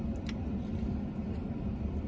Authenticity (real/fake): real